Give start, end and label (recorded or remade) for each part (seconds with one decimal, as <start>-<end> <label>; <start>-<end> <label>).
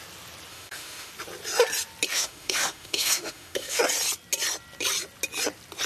0.0-0.5 recorded; 0.5-1.1 remade; 1.1-2.1 recorded; 2.1-3.8 remade; 3.8-5.9 recorded